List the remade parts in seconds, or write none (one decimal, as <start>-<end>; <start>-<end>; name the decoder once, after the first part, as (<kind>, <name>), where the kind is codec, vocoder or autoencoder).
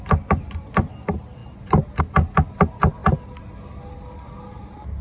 none